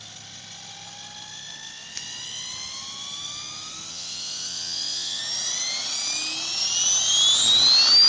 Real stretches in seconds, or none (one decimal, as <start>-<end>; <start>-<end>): 0.0-3.9; 5.2-8.1